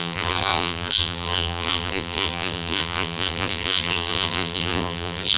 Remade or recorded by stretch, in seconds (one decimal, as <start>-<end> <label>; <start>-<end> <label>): 0.0-5.4 remade